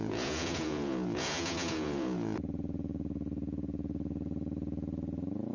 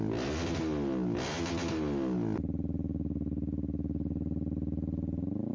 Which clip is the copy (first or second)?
first